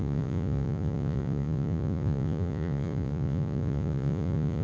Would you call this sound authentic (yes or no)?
no